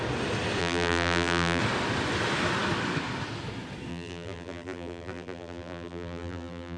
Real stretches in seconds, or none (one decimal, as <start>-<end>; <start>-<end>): 0.0-0.6; 1.6-3.9